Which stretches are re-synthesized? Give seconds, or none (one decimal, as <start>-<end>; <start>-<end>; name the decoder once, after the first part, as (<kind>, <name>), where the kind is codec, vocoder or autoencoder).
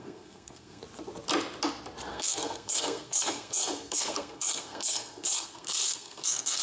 0.0-0.8 (codec, SNAC); 2.1-6.6